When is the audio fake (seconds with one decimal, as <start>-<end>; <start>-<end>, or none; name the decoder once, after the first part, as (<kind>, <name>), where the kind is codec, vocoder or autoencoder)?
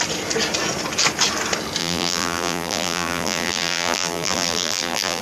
1.8-5.2 (vocoder, BigVGAN v2)